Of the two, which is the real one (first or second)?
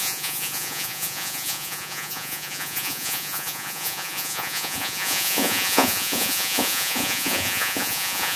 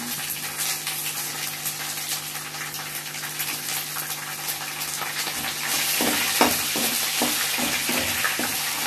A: second